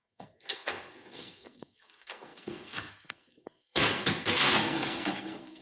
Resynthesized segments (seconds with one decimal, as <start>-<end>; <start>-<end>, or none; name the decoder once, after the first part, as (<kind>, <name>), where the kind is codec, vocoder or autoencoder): 0.0-5.6 (codec, SNAC)